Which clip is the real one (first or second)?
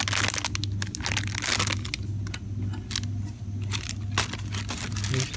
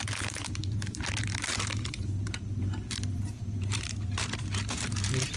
first